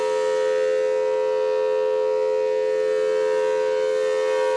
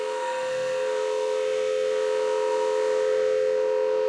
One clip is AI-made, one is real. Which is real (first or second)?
first